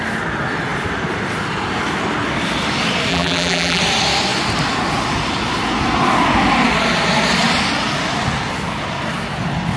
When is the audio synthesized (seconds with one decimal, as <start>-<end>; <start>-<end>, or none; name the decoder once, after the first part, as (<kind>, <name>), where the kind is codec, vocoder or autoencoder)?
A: 3.1-3.8 (vocoder, BigVGAN v2)